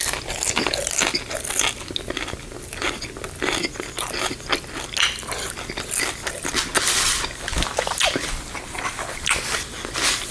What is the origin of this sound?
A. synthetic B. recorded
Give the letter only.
B